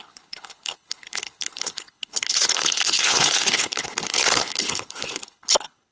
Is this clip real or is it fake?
fake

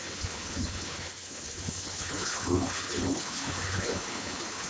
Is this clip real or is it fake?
fake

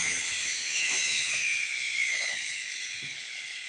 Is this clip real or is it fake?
fake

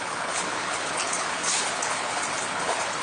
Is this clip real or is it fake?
fake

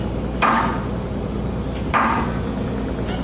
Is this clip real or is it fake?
real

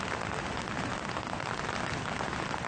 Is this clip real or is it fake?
real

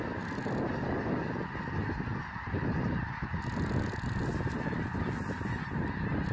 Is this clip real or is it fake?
real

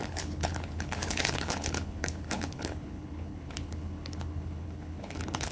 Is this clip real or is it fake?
fake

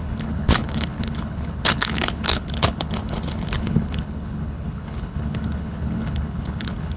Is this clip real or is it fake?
fake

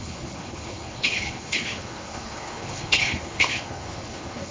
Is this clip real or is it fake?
fake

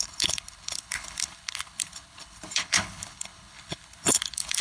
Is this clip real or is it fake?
fake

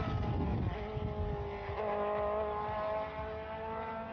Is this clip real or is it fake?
real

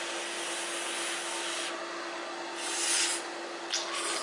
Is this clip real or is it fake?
real